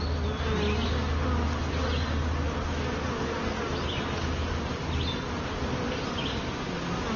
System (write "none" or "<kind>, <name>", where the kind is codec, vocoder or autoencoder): none